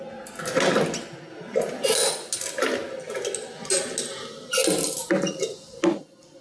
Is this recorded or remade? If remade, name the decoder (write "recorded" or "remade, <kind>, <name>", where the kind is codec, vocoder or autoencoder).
recorded